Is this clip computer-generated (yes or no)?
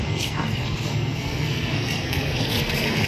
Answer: yes